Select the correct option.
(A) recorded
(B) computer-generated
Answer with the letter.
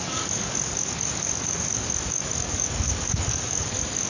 B